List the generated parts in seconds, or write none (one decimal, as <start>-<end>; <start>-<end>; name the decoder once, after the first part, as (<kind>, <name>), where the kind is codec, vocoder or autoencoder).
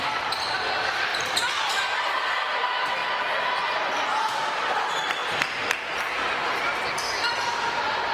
0.0-3.0 (vocoder, BigVGAN v2); 3.8-8.1